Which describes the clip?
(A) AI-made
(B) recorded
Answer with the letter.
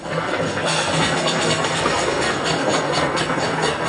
A